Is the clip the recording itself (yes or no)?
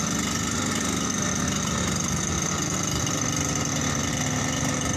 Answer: yes